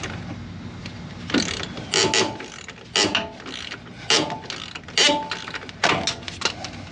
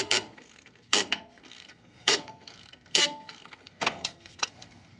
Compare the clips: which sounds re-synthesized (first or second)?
second